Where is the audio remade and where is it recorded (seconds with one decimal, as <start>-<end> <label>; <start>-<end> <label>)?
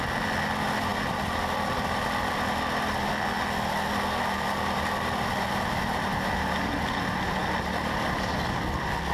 0.0-7.4 recorded; 7.4-8.3 remade; 8.3-9.1 recorded